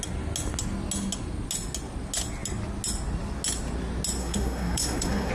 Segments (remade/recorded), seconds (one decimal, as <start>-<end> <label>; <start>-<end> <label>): 0.0-4.2 recorded; 4.2-5.3 remade